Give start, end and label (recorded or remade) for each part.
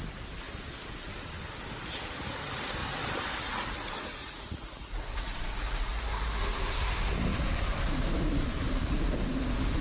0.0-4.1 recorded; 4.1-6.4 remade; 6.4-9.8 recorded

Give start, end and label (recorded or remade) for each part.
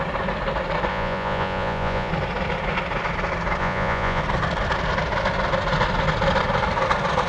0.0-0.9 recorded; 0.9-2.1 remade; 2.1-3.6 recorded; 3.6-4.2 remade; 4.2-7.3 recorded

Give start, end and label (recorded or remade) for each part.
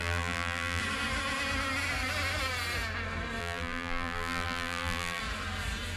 0.0-0.8 remade; 0.8-3.4 recorded; 3.4-5.2 remade; 5.2-6.0 recorded